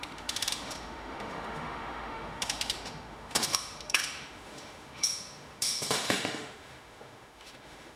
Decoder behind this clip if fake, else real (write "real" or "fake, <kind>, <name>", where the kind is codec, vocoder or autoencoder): fake, autoencoder, DAC-VAE